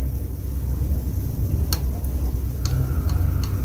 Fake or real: real